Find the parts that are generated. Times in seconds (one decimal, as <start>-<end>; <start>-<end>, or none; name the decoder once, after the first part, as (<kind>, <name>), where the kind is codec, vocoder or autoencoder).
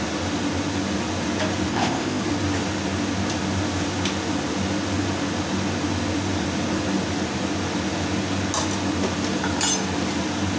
1.7-2.2 (codec, ZipCodec)